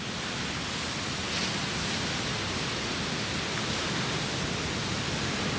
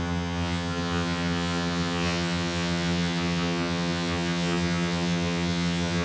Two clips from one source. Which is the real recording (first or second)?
first